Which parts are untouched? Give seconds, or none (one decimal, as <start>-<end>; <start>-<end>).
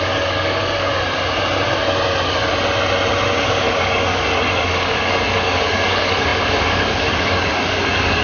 0.9-3.4